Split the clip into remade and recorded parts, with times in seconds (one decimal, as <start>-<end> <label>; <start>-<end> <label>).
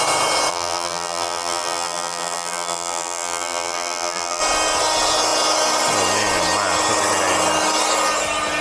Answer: 0.0-0.5 recorded; 0.5-4.4 remade; 4.4-8.6 recorded